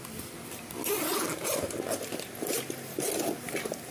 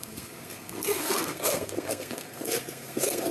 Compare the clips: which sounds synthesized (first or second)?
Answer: second